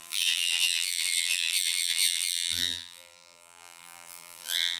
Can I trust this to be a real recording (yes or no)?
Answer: no